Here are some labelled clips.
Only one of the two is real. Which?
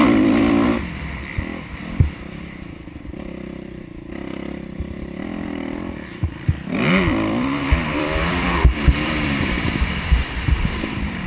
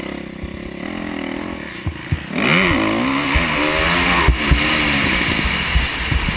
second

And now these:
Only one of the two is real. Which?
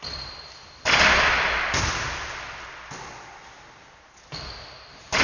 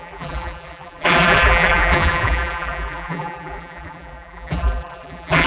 first